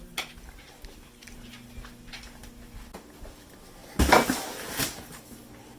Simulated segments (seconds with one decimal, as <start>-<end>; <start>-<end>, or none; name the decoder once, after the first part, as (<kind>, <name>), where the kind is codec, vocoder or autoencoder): 3.8-4.4 (vocoder, BigVGAN v2)